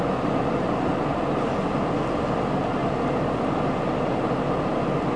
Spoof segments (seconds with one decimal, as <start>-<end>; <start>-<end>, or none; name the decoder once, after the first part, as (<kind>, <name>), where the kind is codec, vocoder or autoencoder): none